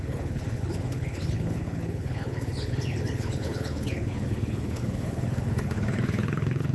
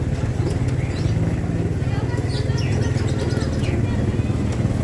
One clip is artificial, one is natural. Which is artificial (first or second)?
first